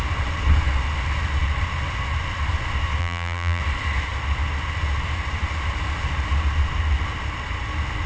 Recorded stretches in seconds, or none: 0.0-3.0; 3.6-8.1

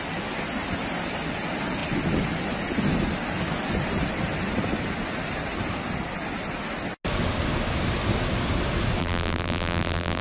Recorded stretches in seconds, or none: 0.0-9.0